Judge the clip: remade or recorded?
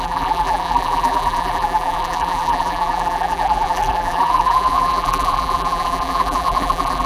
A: remade